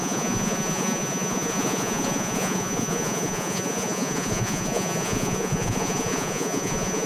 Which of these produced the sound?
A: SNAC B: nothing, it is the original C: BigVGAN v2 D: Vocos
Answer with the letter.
D